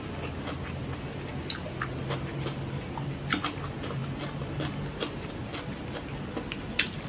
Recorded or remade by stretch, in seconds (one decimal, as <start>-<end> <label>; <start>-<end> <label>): 0.0-7.1 recorded